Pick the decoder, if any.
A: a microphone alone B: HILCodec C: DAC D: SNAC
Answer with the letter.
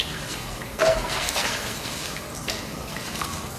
D